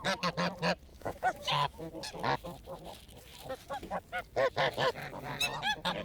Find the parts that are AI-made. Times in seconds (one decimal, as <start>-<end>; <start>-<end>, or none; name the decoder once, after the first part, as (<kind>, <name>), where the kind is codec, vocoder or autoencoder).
0.9-1.9 (autoencoder, DAC-VAE)